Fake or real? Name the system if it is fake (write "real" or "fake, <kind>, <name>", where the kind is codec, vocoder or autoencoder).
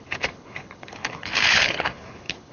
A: fake, codec, HILCodec